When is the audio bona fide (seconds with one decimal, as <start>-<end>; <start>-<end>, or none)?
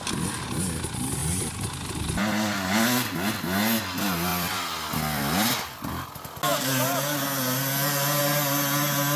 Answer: 0.0-4.3; 5.9-9.2